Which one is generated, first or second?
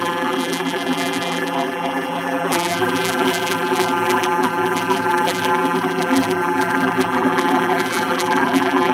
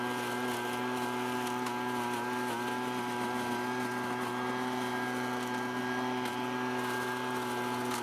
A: first